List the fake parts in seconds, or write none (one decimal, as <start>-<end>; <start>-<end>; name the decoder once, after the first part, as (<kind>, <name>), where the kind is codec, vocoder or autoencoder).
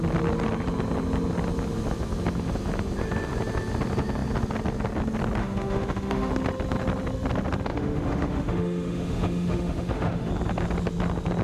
5.4-6.3 (autoencoder, DAC-VAE); 7.7-10.3